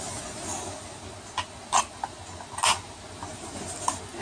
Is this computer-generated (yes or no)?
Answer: no